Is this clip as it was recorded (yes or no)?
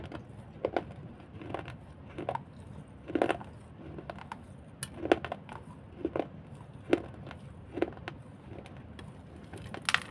yes